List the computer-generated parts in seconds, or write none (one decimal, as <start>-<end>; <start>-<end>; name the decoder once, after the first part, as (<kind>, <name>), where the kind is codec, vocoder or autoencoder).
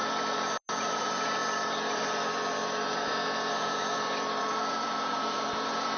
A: 0.8-1.4 (vocoder, BigVGAN v2); 4.4-6.0